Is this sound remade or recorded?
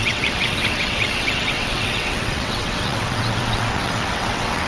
remade